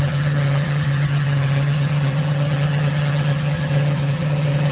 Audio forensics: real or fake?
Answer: fake